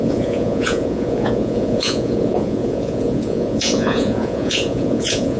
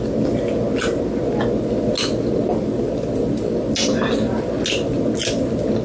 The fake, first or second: first